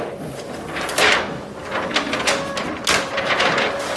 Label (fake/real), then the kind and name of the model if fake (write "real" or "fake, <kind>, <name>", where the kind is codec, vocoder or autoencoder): real